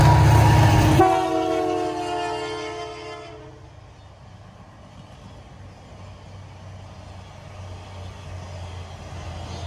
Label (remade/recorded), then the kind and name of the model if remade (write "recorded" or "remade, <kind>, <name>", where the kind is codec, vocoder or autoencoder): recorded